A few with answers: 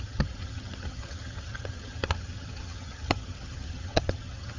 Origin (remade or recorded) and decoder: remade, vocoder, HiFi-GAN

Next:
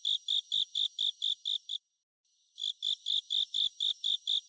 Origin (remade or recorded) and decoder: recorded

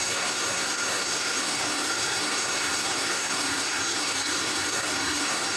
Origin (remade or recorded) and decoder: remade, codec, SNAC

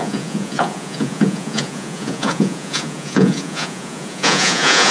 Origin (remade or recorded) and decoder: remade, vocoder, Vocos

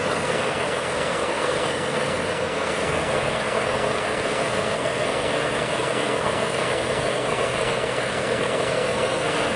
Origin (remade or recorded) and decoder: remade, codec, SNAC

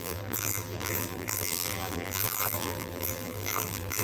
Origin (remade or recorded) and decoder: remade, vocoder, BigVGAN v2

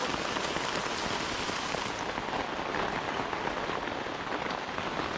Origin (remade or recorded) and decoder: recorded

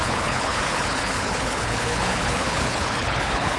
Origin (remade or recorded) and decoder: remade, codec, HILCodec